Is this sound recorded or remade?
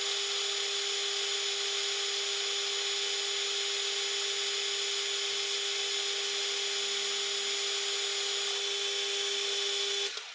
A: recorded